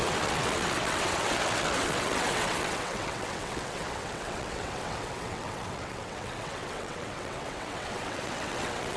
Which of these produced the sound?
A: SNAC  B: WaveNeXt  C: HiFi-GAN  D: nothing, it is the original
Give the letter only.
B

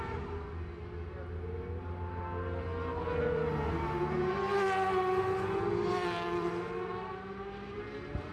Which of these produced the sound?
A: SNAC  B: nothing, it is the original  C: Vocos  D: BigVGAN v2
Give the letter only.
B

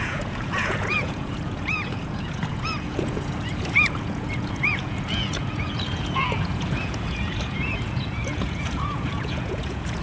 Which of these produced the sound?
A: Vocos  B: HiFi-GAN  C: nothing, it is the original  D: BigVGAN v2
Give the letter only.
A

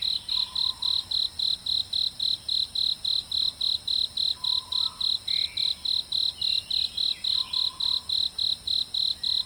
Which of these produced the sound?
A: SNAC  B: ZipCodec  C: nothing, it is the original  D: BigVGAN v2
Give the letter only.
C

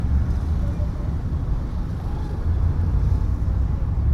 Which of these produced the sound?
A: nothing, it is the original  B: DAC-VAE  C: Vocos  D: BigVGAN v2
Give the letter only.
A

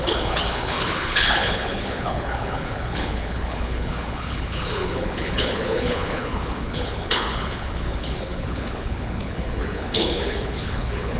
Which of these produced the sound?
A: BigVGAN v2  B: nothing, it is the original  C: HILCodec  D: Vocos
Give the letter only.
C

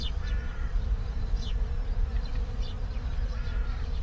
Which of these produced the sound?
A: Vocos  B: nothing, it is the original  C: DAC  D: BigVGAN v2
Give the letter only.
D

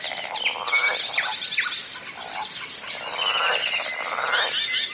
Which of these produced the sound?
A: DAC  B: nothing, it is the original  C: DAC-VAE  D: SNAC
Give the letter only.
B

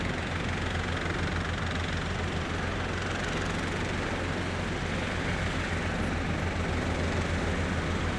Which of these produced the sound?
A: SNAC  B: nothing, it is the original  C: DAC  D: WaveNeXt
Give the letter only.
B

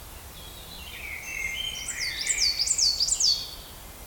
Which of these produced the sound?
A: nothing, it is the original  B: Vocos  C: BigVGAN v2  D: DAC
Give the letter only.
A